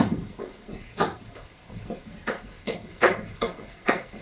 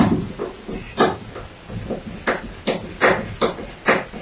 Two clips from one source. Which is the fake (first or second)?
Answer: first